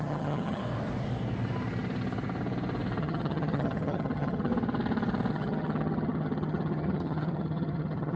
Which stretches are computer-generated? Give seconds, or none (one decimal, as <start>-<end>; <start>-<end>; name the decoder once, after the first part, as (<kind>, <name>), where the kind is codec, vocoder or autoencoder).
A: 0.0-0.6 (vocoder, HiFi-GAN); 3.0-4.5; 5.3-8.2